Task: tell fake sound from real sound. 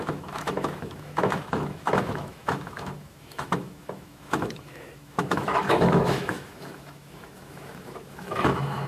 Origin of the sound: fake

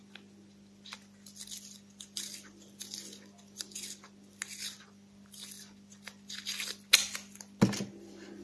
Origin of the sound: real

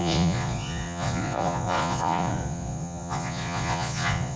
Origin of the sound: fake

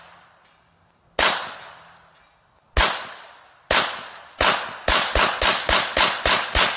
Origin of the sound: real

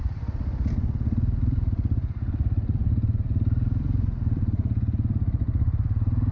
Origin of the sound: fake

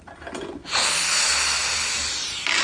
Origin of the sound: real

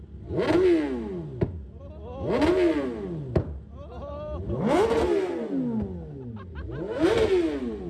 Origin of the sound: real